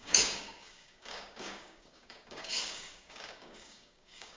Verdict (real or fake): fake